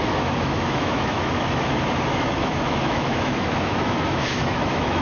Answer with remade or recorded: remade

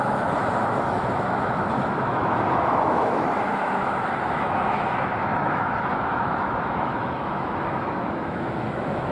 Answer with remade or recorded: remade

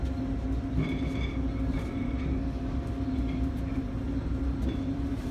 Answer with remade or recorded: recorded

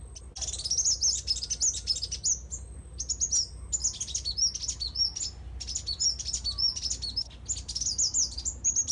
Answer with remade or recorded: recorded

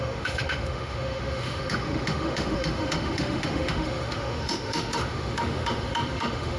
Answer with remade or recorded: remade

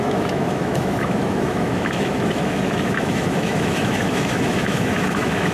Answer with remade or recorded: remade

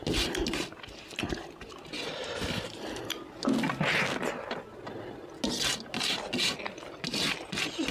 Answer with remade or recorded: recorded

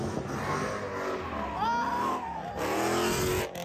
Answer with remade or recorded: recorded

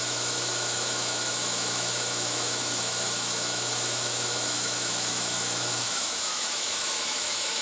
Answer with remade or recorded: remade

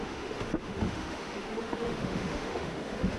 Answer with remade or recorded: remade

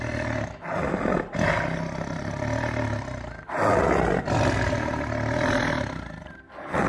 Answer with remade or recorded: recorded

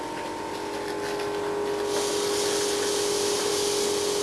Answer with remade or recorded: recorded